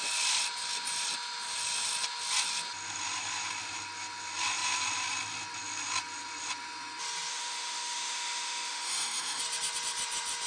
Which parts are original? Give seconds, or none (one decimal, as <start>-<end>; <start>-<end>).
0.0-7.3; 9.4-10.5